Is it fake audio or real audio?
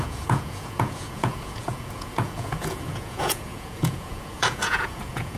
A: fake